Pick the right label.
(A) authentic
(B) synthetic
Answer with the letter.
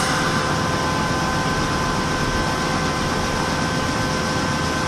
A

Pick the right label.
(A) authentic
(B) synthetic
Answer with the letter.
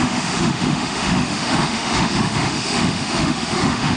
B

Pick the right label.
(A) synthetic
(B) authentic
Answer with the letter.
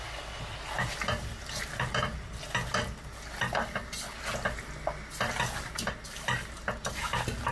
B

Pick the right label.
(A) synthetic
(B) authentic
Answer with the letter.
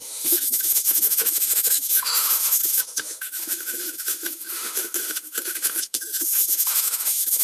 A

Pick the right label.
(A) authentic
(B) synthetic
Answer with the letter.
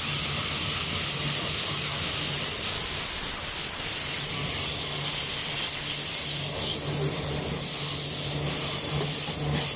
A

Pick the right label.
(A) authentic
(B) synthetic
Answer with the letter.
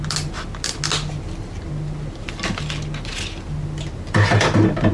A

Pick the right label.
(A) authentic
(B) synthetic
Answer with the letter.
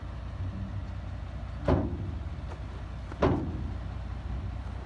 A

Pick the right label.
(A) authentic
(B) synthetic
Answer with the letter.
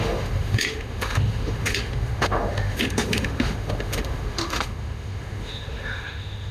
B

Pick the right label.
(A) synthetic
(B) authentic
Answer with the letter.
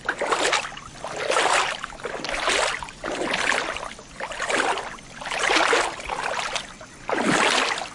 B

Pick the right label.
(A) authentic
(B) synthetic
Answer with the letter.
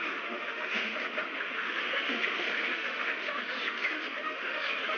B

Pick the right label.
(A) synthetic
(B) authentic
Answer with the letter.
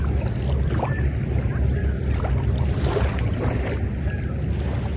B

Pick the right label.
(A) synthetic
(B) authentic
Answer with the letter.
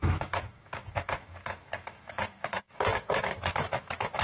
A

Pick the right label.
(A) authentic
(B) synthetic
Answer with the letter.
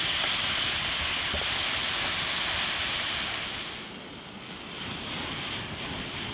A